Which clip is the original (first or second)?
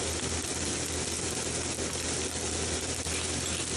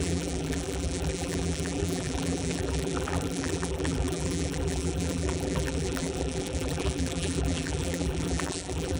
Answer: first